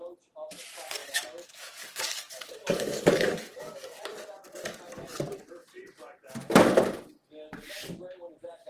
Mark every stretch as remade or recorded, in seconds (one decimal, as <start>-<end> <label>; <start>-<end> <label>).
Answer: 0.0-1.0 recorded; 1.0-4.0 remade; 4.0-8.7 recorded